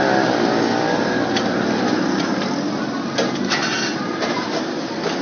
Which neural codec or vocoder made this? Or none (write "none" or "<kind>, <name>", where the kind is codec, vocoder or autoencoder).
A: none